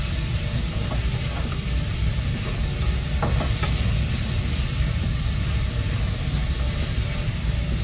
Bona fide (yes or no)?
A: yes